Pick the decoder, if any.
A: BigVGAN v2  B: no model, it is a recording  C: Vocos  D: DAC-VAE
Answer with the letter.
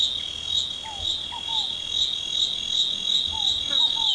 B